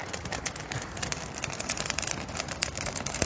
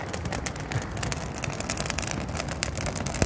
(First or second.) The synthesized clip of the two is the first